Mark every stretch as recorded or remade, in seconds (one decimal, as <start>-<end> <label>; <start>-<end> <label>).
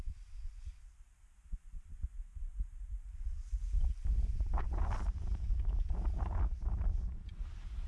0.0-7.9 recorded